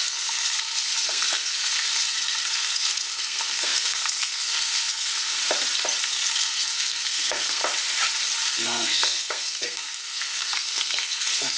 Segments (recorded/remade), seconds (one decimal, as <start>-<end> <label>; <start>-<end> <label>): 0.0-5.4 remade; 5.4-6.0 recorded; 6.0-7.6 remade; 7.6-8.5 recorded; 8.5-11.6 remade